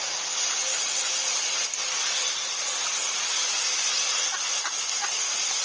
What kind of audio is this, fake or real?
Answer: real